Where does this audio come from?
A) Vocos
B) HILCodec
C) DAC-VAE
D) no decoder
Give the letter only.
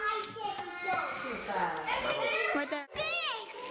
D